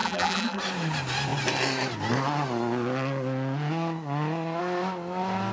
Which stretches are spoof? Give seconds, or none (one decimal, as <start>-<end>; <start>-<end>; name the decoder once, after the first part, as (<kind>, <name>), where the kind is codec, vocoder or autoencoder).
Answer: 0.0-0.6 (vocoder, BigVGAN v2)